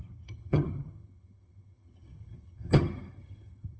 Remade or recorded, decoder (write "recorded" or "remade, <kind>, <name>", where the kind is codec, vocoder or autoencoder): remade, vocoder, HiFi-GAN